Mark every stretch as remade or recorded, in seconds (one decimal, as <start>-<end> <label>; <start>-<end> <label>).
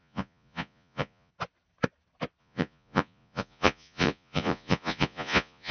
0.0-1.3 remade; 1.3-2.4 recorded; 2.4-5.7 remade